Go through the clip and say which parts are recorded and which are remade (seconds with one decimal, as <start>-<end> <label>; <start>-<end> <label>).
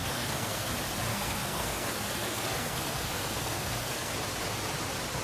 0.0-0.7 remade; 0.7-1.1 recorded; 1.1-4.1 remade; 4.1-5.2 recorded